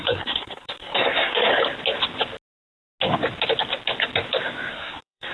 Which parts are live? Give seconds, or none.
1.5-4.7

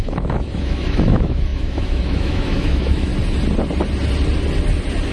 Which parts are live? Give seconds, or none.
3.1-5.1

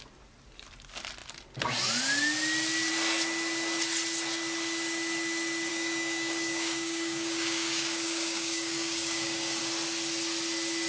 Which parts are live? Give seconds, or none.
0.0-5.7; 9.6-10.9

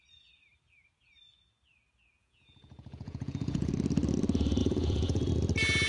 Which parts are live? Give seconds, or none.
0.0-2.2; 3.7-4.6; 5.3-5.9

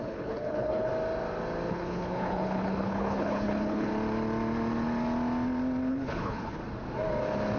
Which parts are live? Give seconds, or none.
0.9-1.7; 3.9-5.9; 6.6-7.6

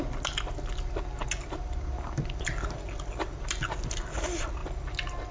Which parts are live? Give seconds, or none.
0.0-5.3

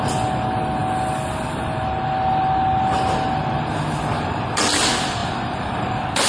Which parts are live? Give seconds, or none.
0.0-5.2

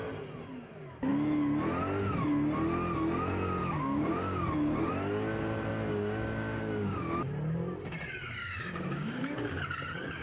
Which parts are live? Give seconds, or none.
0.0-3.6; 4.9-5.7; 7.2-8.4; 9.6-10.2